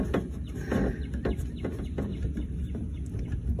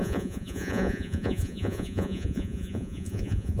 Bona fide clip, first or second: first